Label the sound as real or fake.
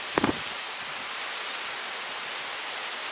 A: real